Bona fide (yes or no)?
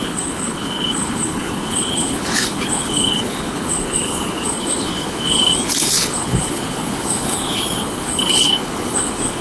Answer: no